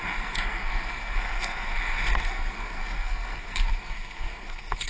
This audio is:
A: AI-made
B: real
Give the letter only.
A